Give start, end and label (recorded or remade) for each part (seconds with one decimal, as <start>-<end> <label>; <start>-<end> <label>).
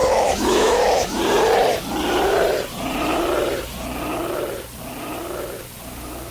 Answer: 0.0-1.2 remade; 1.2-6.3 recorded